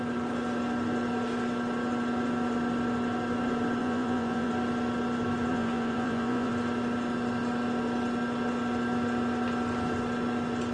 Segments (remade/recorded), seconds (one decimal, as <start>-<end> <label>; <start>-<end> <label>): 0.0-3.8 recorded; 3.8-4.5 remade; 4.5-5.5 recorded; 5.5-6.5 remade; 6.5-10.7 recorded

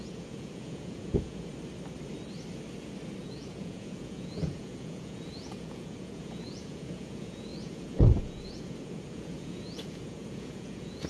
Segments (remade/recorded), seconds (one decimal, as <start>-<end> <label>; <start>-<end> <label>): 0.0-1.5 remade; 1.5-3.2 recorded; 3.2-11.1 remade

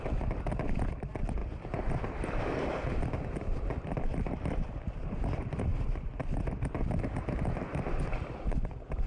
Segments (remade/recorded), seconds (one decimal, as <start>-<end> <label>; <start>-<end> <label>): 0.0-9.1 recorded

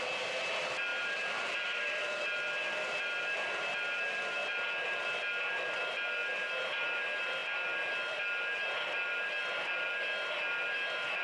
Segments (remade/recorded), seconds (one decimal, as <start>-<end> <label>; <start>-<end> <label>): 0.0-0.9 recorded; 0.9-1.8 remade; 1.8-11.2 recorded